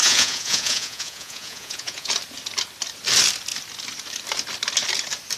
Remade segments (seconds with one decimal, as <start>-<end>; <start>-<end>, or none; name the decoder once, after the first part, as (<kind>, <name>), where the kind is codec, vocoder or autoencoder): 0.0-2.1 (vocoder, Vocos)